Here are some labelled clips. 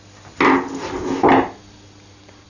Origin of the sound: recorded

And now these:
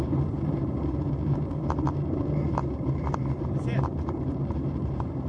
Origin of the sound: remade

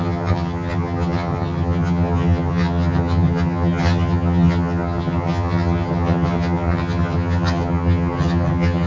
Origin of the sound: remade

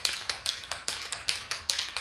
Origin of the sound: remade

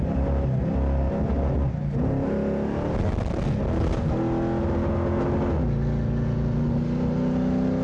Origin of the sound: recorded